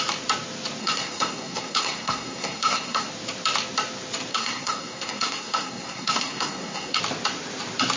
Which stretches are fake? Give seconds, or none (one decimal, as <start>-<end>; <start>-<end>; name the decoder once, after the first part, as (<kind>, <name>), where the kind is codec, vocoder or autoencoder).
0.8-3.1 (codec, SNAC); 4.3-7.0